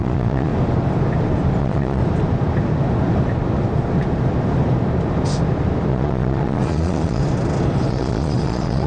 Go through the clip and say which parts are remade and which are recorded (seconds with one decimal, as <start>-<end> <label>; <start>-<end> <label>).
0.0-0.5 remade; 0.5-1.6 recorded; 1.6-2.0 remade; 2.0-5.9 recorded; 5.9-7.2 remade; 7.2-7.9 recorded; 7.9-8.9 remade